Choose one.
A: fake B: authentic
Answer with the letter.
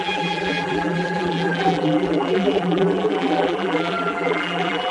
A